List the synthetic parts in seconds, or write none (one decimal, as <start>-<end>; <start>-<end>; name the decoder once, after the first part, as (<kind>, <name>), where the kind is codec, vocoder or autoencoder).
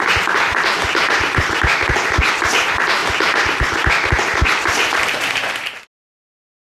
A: 0.8-2.5 (vocoder, BigVGAN v2); 4.3-5.4